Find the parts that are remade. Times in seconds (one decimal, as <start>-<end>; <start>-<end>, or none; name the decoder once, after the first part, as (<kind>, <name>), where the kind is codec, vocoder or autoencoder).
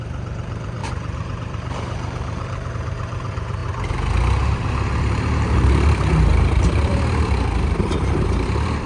0.0-3.6 (vocoder, BigVGAN v2); 5.0-6.9; 7.8-8.9